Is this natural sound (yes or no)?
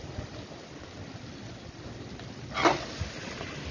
yes